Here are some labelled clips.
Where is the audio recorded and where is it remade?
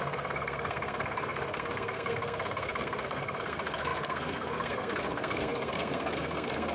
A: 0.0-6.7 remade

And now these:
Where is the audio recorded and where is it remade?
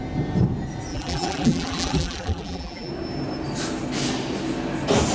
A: 0.0-0.9 recorded; 0.9-2.9 remade; 2.9-5.1 recorded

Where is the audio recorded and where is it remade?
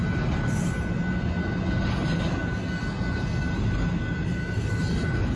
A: 0.0-5.4 recorded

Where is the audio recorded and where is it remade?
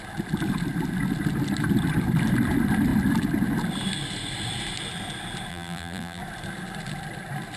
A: 0.0-5.5 recorded; 5.5-6.2 remade; 6.2-7.6 recorded